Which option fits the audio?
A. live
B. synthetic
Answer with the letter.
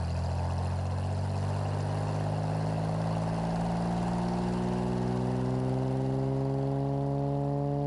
A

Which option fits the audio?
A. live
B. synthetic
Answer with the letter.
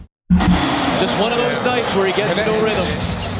A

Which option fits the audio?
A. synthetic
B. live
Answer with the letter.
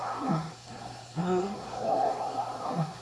A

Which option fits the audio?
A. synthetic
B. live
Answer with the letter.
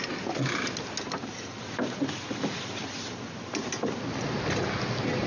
B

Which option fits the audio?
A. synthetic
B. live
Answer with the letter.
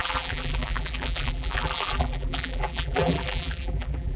A